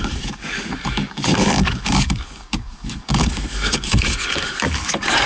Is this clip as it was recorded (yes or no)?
no